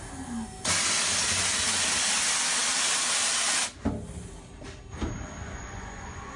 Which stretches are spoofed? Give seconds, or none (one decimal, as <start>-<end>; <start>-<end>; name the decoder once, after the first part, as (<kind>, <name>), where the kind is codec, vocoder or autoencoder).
5.4-6.4 (vocoder, Vocos)